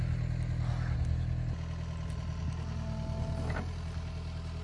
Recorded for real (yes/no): yes